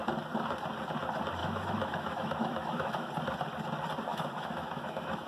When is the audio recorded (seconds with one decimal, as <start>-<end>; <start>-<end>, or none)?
0.0-1.4; 3.1-4.1